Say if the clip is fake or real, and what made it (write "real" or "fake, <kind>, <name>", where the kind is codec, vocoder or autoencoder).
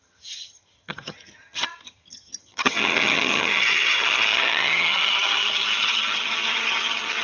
fake, vocoder, HiFi-GAN